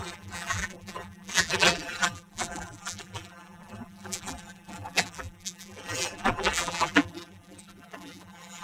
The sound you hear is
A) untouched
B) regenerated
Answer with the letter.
B